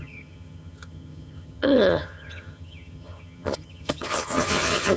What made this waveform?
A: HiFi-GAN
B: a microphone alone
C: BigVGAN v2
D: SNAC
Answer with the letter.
A